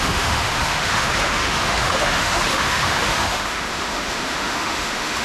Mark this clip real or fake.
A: fake